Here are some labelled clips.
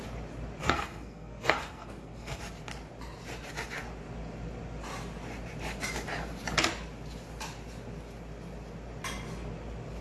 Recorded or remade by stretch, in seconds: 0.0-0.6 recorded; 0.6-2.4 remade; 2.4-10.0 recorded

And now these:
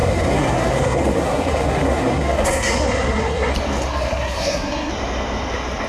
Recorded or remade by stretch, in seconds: 0.0-3.5 remade; 3.5-3.9 recorded; 3.9-4.9 remade; 4.9-5.9 recorded

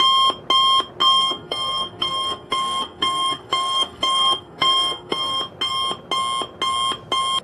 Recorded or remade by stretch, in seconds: 0.0-1.0 recorded; 1.0-5.4 remade; 5.4-7.4 recorded

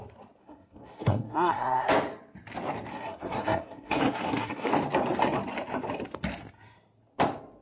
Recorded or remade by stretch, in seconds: 0.0-0.4 recorded; 0.4-1.9 remade; 1.9-2.9 recorded; 2.9-4.7 remade; 4.7-7.6 recorded